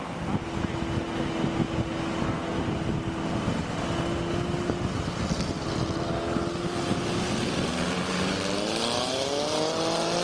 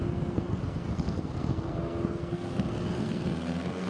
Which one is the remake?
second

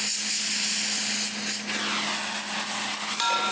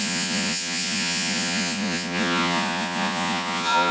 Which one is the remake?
second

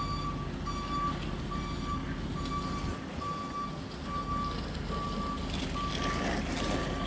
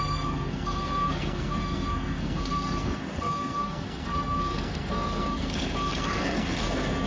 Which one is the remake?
second